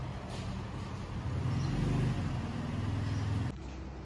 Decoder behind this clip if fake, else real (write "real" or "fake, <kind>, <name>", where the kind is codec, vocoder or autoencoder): real